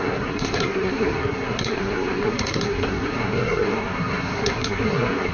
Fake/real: fake